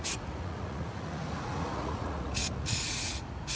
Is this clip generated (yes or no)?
yes